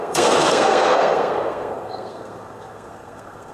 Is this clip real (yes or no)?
no